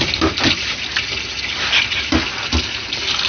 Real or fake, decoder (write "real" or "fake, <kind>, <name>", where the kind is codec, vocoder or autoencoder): real